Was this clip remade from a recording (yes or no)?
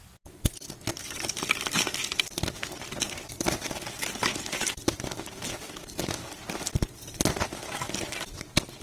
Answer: no